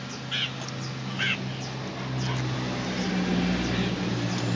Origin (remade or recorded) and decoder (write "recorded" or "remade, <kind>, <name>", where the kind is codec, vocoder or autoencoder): recorded